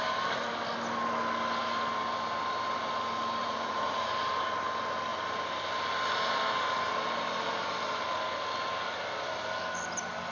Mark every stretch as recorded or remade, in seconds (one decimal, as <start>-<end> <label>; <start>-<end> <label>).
0.0-3.4 recorded; 3.4-4.1 remade; 4.1-10.3 recorded